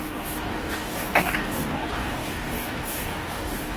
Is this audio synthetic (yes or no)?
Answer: yes